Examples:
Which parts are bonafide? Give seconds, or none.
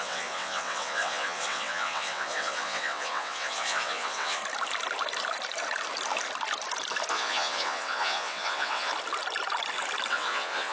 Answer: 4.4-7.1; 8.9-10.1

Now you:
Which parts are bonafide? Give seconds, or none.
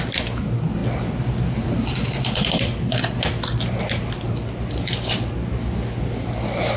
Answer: 0.0-6.8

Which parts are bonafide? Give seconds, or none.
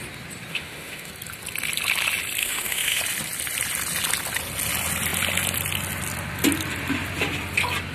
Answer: 0.0-0.5; 1.1-2.4; 3.0-7.9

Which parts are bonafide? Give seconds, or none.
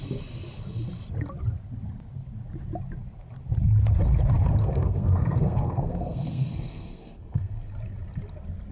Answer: 0.0-4.6; 7.7-8.7